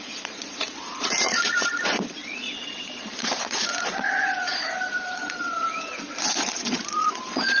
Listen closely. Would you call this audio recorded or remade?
remade